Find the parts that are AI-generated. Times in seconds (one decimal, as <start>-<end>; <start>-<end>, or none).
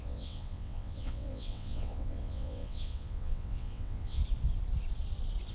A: 0.0-4.2